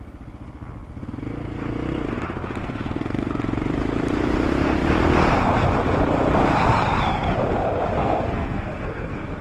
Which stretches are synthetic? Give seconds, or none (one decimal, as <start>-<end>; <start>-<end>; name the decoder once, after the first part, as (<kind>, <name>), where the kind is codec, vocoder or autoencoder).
2.6-3.3 (codec, SNAC); 8.0-9.4